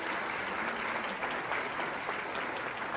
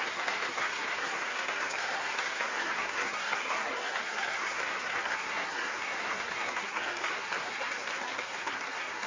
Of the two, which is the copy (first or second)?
second